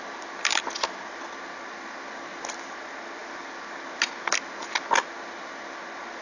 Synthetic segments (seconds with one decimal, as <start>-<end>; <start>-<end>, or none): none